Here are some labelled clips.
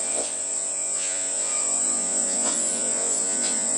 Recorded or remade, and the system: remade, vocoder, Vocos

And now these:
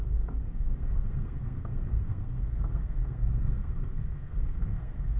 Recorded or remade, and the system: remade, codec, SNAC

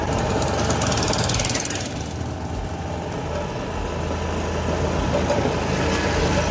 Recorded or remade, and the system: recorded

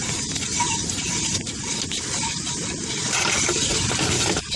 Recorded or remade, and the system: recorded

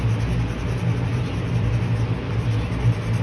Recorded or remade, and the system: recorded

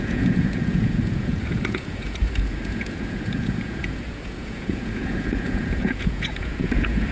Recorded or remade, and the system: remade, vocoder, Vocos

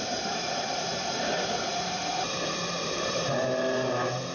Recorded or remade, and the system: remade, vocoder, BigVGAN v2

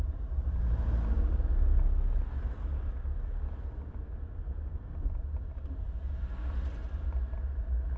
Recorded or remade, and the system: recorded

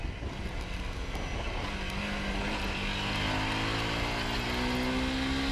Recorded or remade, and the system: recorded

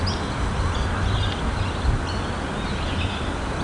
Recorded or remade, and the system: recorded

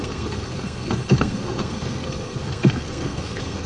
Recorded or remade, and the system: remade, codec, SNAC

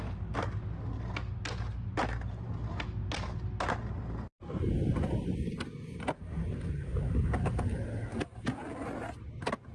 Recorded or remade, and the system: recorded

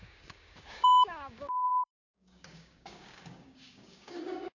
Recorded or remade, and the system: remade, codec, DAC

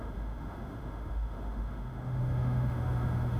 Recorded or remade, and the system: remade, autoencoder, DAC-VAE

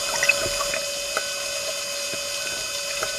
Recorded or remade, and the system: recorded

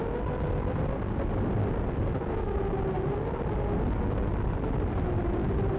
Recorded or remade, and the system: recorded